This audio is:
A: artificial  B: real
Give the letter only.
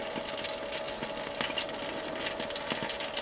B